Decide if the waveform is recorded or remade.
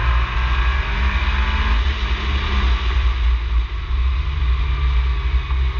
recorded